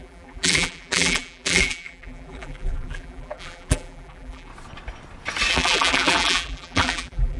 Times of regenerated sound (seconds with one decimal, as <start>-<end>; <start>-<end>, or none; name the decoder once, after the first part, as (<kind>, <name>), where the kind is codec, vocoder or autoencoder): 0.0-4.5 (vocoder, BigVGAN v2); 5.5-7.4